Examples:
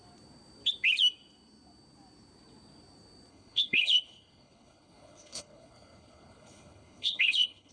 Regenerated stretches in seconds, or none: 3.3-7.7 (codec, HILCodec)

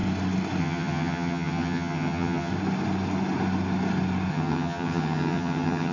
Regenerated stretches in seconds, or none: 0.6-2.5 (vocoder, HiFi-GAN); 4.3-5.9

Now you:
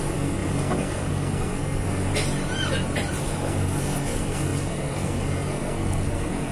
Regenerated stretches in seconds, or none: 0.0-2.1 (codec, SNAC); 3.2-6.5

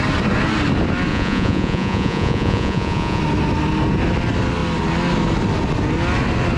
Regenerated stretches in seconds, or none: 1.1-3.2 (vocoder, Vocos)

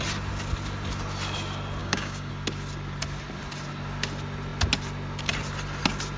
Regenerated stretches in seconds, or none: 1.8-2.3 (codec, DAC)

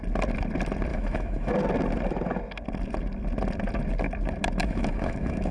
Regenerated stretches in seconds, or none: 0.9-1.5 (autoencoder, DAC-VAE); 4.6-5.5

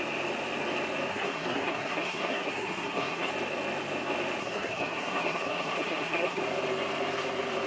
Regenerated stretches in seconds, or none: 1.1-3.3 (codec, SNAC); 4.4-6.4

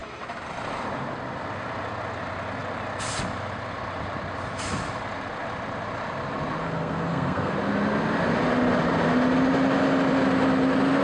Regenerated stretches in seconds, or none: 6.6-7.5 (codec, SNAC)